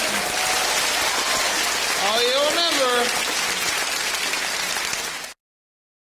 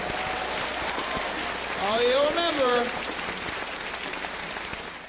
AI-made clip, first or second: second